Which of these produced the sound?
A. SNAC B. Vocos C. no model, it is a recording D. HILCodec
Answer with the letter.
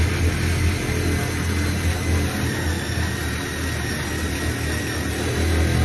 C